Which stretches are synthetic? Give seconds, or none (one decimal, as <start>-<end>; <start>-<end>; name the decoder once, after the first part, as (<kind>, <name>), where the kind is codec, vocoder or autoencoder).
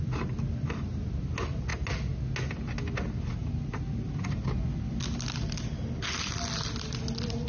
none